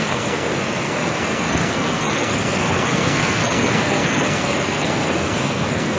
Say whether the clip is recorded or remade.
remade